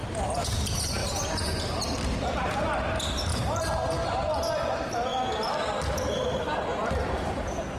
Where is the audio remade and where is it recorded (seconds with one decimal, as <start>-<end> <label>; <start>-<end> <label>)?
0.0-0.6 remade; 0.6-1.0 recorded; 1.0-2.6 remade; 2.6-3.3 recorded; 3.3-4.4 remade; 4.4-7.8 recorded